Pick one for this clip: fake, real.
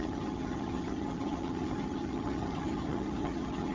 fake